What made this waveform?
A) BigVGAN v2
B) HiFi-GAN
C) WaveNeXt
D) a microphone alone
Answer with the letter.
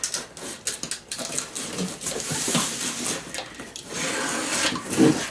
D